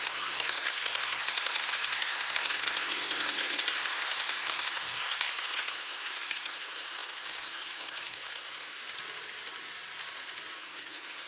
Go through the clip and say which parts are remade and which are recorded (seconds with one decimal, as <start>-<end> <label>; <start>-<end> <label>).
0.0-8.8 remade; 8.8-10.6 recorded; 10.6-11.3 remade